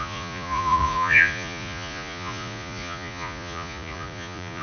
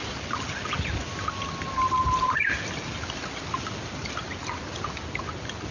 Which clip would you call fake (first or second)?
first